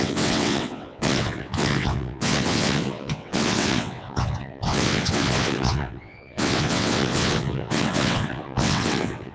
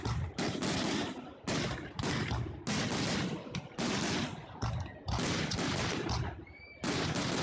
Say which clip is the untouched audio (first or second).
second